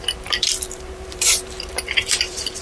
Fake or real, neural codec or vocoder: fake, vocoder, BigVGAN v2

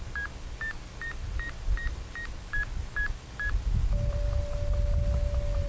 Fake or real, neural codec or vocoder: real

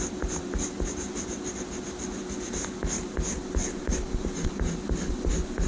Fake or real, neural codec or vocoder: real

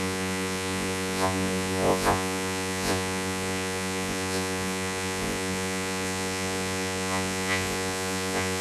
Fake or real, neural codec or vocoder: fake, vocoder, Vocos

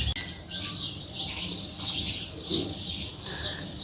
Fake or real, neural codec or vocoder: real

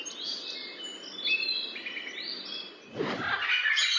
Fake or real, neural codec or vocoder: real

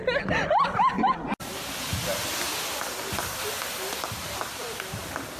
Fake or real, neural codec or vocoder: real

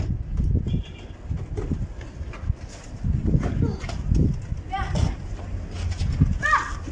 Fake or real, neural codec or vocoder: real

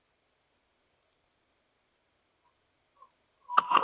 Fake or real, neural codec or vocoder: real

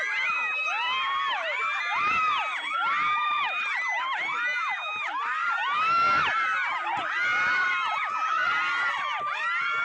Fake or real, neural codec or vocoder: real